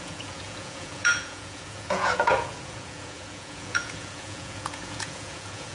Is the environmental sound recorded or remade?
remade